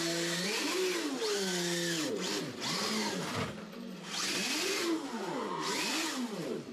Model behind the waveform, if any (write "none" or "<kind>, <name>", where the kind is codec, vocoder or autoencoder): none